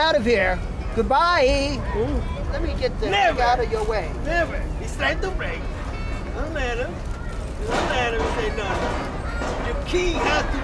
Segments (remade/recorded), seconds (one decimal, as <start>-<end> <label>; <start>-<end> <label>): 0.0-10.6 recorded